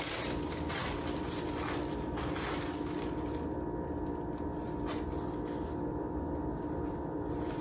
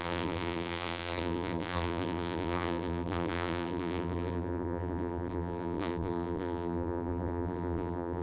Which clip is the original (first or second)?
first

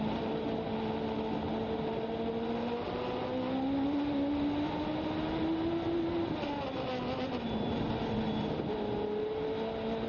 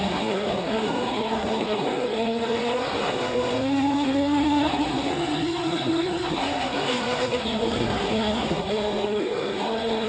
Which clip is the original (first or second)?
first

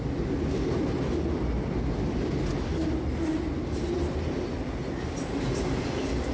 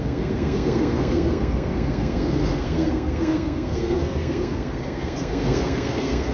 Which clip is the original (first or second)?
first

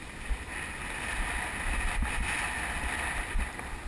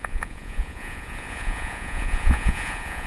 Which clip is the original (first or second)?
first